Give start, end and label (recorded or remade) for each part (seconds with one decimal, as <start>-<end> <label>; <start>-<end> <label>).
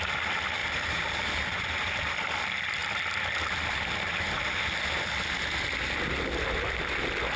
0.0-0.6 recorded; 0.6-2.1 remade; 2.1-7.4 recorded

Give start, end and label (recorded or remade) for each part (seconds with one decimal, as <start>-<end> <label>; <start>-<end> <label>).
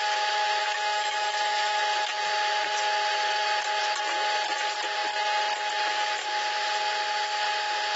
0.0-0.6 recorded; 0.6-1.8 remade; 1.8-8.0 recorded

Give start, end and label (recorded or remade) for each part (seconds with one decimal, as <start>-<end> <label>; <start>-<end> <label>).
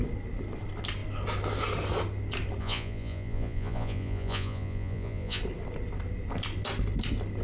0.0-2.6 recorded; 2.6-5.4 remade; 5.4-7.4 recorded